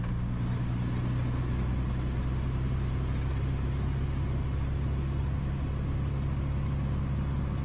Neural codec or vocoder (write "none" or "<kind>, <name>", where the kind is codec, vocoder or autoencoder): none